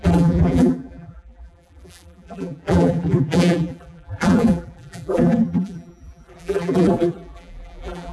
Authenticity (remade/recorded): remade